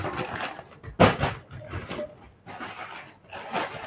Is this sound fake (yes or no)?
no